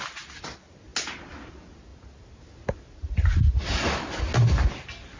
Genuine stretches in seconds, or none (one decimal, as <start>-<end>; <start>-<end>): 0.0-1.9; 4.2-5.2